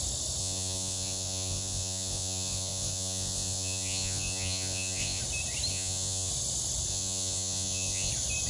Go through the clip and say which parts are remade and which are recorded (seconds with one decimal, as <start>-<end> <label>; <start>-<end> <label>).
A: 0.0-0.4 recorded; 0.4-5.2 remade; 5.2-5.7 recorded; 5.7-6.3 remade; 6.3-6.9 recorded; 6.9-8.1 remade; 8.1-8.5 recorded